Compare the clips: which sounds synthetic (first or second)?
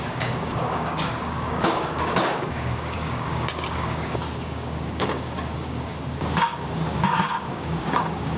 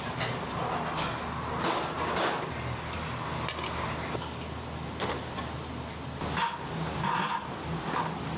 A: first